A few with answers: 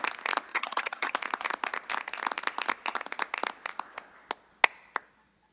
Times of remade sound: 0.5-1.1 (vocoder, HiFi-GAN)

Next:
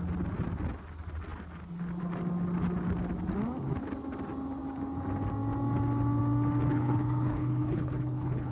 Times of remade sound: 6.7-8.5 (codec, HILCodec)

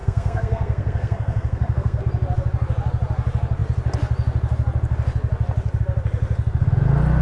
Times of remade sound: 0.0-2.0 (codec, SNAC)

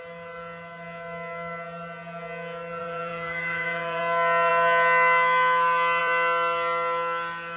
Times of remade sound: 2.8-4.0 (vocoder, Vocos)